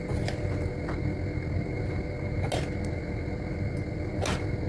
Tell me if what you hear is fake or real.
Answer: real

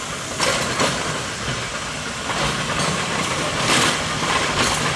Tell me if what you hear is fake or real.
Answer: fake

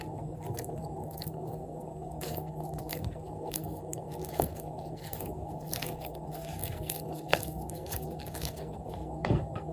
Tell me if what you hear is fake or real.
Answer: fake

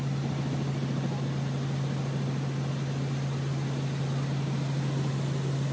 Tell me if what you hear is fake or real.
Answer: real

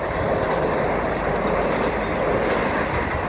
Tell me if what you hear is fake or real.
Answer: real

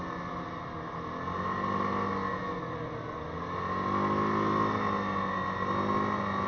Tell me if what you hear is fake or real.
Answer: real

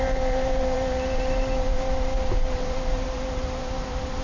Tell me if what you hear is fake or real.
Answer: fake